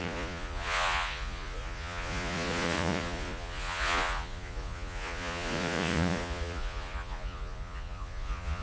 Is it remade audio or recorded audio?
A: remade